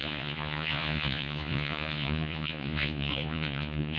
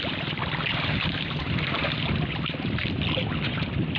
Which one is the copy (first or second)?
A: first